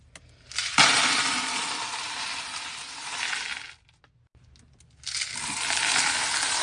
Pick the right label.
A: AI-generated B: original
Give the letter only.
B